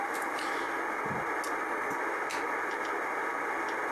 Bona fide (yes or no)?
yes